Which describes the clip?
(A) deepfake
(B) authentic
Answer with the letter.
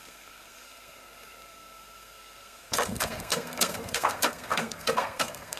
A